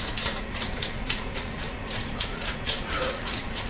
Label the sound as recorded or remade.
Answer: remade